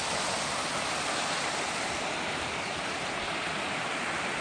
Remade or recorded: recorded